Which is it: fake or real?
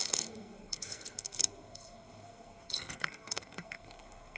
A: fake